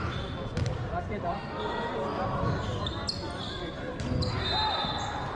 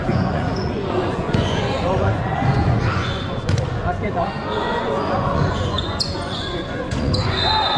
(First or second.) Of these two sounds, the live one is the first